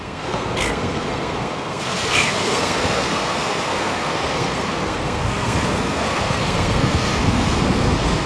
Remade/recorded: remade